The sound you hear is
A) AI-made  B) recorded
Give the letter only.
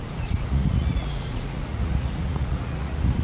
A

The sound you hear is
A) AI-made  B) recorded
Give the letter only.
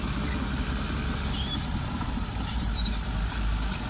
B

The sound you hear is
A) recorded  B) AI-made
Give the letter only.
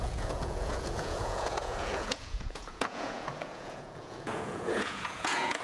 B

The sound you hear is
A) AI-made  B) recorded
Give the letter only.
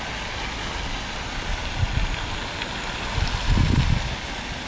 B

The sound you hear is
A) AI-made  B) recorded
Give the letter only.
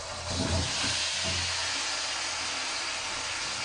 B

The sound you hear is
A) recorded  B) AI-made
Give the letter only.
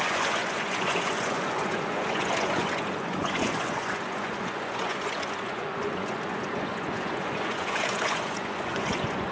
B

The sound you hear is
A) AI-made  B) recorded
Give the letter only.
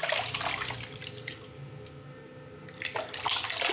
B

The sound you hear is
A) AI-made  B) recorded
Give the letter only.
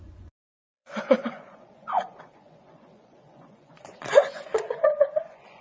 A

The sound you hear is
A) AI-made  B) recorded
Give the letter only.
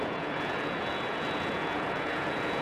A